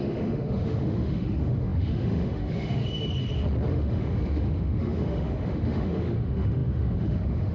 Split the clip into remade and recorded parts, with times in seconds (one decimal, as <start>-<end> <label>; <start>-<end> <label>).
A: 0.0-2.8 remade; 2.8-3.7 recorded; 3.7-7.5 remade